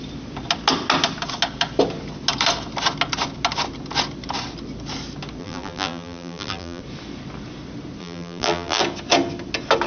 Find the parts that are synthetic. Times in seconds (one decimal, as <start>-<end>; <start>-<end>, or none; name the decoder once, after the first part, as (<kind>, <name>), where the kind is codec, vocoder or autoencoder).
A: 5.4-6.8 (vocoder, BigVGAN v2); 8.0-8.8